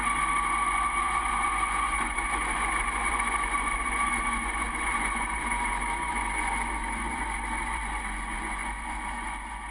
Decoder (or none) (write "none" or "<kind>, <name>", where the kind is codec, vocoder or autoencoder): vocoder, Vocos